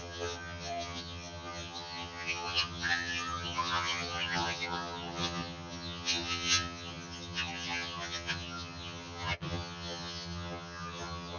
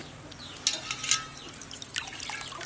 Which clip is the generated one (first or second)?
first